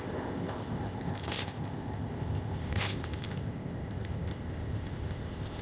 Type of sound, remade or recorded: remade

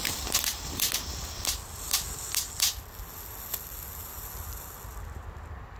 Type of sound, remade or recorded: recorded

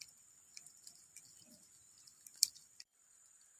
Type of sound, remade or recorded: recorded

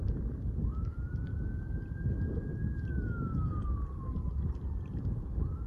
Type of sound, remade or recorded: recorded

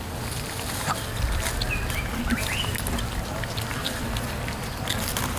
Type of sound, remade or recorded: recorded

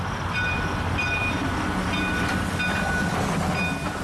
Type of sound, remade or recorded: recorded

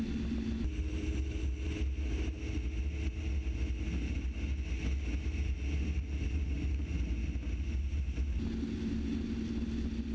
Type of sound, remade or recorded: recorded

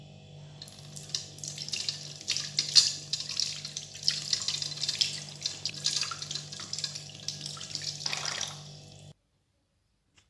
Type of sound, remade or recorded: recorded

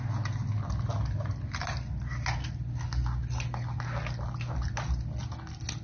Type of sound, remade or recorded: recorded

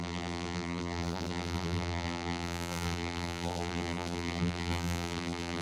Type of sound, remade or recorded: remade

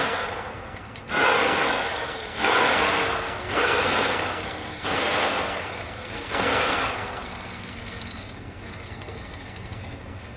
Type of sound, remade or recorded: remade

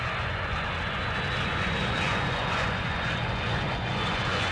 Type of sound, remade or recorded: remade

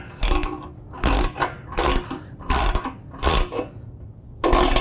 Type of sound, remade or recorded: recorded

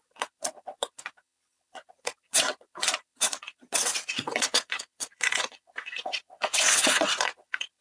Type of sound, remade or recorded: remade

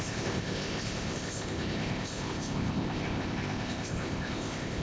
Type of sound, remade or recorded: remade